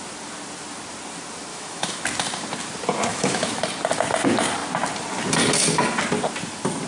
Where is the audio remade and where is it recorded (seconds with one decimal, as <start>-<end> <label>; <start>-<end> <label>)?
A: 0.0-1.5 recorded; 1.5-2.0 remade; 2.0-3.1 recorded; 3.1-3.6 remade; 3.6-6.9 recorded